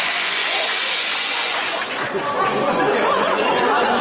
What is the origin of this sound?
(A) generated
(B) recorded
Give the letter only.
A